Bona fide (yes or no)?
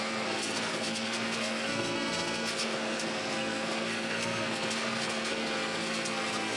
no